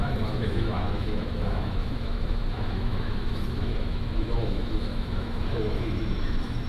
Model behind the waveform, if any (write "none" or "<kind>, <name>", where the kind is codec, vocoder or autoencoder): autoencoder, DAC-VAE